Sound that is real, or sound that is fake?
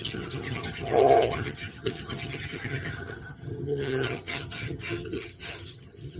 fake